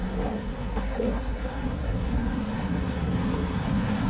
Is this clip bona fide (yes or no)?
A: no